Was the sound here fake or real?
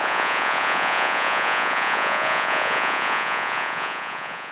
fake